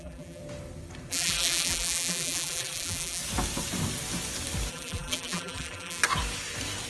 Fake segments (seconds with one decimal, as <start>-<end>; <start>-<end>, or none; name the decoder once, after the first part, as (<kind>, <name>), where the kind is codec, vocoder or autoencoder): 0.0-0.4 (vocoder, BigVGAN v2); 1.1-3.2; 4.7-6.0

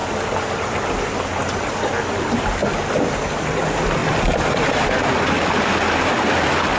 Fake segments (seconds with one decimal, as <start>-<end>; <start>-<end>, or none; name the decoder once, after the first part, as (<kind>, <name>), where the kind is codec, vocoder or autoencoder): 4.0-5.5 (vocoder, BigVGAN v2)

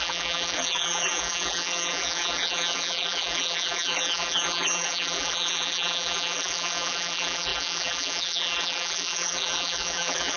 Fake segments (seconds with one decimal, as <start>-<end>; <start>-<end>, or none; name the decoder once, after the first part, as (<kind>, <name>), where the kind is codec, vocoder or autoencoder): 0.0-10.4 (vocoder, BigVGAN v2)

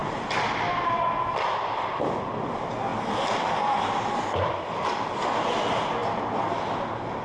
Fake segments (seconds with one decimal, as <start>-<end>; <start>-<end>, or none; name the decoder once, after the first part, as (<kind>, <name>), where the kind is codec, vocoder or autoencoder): none

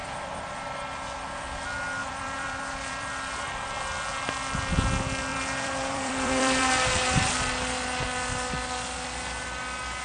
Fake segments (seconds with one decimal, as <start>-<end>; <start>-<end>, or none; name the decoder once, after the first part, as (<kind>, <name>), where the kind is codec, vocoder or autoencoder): 2.0-3.7 (vocoder, BigVGAN v2); 5.3-6.7

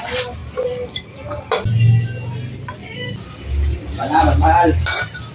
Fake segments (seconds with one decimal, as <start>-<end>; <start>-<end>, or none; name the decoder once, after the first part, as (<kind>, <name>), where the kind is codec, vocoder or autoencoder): 0.4-1.4 (vocoder, BigVGAN v2); 2.8-3.9

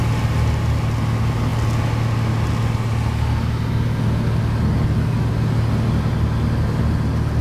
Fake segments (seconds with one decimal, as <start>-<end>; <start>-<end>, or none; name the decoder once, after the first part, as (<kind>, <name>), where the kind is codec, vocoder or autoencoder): none

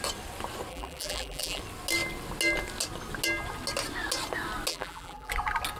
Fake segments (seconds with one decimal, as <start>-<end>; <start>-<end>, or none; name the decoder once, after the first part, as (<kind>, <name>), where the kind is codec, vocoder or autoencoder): 0.7-1.6 (vocoder, BigVGAN v2); 4.7-5.3